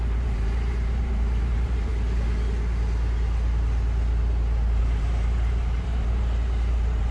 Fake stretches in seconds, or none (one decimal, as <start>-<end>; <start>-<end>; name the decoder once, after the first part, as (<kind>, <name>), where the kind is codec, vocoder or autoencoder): 0.0-1.9 (vocoder, BigVGAN v2); 4.8-7.1